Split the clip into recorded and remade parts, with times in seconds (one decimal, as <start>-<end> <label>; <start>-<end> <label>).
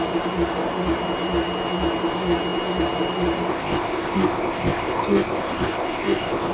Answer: 0.0-3.5 recorded; 3.5-6.5 remade